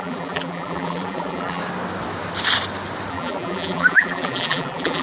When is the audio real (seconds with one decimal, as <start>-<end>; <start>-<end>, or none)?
1.6-3.1